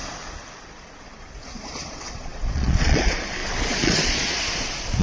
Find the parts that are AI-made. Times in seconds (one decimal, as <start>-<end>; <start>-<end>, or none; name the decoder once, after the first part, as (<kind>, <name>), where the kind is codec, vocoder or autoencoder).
0.6-5.0 (vocoder, Vocos)